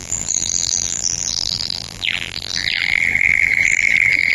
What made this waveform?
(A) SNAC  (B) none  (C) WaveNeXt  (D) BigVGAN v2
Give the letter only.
D